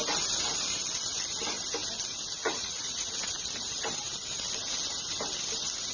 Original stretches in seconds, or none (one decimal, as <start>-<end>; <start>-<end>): 0.0-2.4; 3.1-5.9